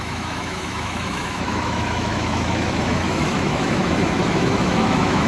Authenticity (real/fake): fake